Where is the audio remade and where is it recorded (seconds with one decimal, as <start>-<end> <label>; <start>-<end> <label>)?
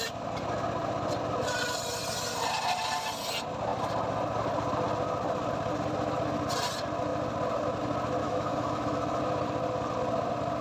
0.0-8.2 recorded; 8.2-9.2 remade; 9.2-10.6 recorded